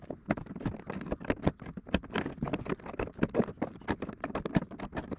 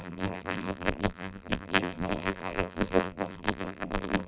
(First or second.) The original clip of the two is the first